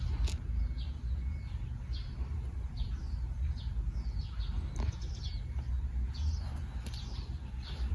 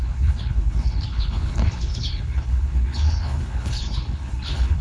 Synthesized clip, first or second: second